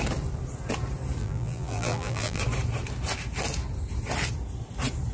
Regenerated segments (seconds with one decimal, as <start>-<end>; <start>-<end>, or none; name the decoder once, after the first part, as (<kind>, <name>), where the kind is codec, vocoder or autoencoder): 1.2-2.4 (vocoder, BigVGAN v2)